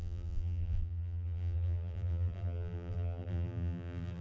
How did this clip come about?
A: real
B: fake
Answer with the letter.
B